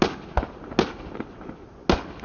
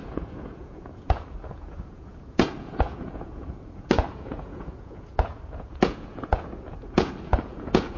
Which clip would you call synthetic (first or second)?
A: second